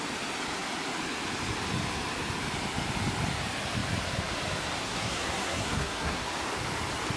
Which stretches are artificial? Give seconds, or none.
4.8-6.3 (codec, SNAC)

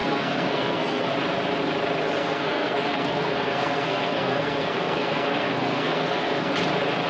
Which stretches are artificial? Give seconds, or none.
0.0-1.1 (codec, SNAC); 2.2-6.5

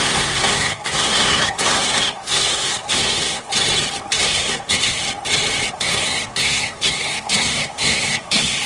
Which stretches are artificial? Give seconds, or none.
0.0-3.5 (codec, SNAC); 4.2-5.0; 5.7-8.7